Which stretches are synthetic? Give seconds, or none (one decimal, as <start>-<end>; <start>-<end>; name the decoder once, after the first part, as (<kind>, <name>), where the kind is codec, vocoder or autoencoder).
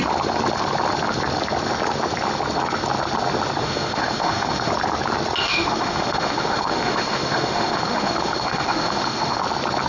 3.6-4.7 (autoencoder, DAC-VAE); 5.4-9.4